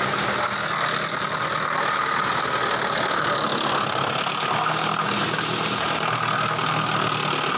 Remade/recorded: recorded